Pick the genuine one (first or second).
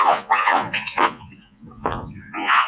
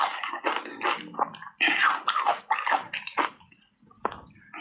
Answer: second